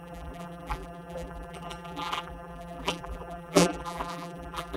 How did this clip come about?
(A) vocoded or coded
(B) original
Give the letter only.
A